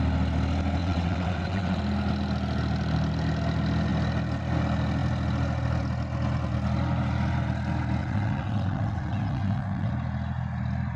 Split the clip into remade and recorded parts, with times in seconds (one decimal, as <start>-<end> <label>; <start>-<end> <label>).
0.0-0.8 recorded; 0.8-1.8 remade; 1.8-8.0 recorded; 8.0-9.9 remade; 9.9-11.0 recorded